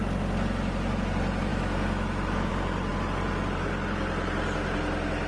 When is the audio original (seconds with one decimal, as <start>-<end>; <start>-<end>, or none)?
0.0-1.5; 2.5-5.3